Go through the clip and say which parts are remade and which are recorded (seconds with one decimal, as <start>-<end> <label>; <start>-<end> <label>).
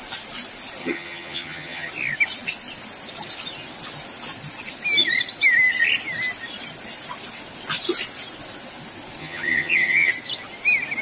0.0-0.8 recorded; 0.8-1.9 remade; 1.9-9.2 recorded; 9.2-10.1 remade; 10.1-11.0 recorded